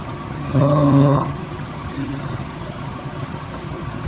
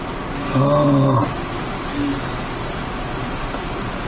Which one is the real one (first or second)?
second